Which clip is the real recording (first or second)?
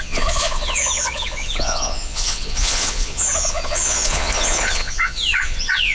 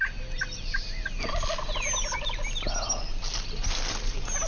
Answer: second